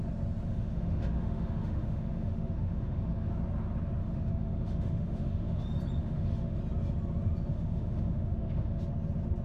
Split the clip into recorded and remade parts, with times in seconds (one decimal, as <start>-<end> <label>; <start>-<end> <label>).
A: 0.0-0.5 recorded; 0.5-3.3 remade; 3.3-4.0 recorded; 4.0-5.6 remade; 5.6-6.0 recorded; 6.0-6.6 remade; 6.6-7.5 recorded; 7.5-8.8 remade; 8.8-9.4 recorded